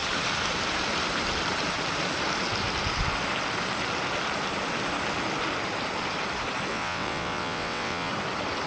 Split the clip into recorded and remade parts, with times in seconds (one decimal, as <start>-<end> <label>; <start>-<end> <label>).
0.0-6.7 recorded; 6.7-8.1 remade; 8.1-8.7 recorded